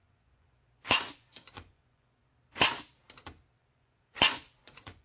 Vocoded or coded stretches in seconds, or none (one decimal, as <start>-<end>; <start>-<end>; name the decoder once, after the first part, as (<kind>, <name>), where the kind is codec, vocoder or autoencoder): 0.0-2.2 (vocoder, Vocos); 3.6-5.0